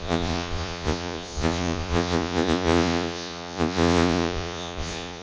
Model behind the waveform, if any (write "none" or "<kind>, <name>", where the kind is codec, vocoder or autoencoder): vocoder, Vocos